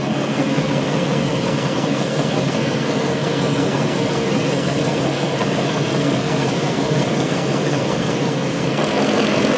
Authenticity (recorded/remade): remade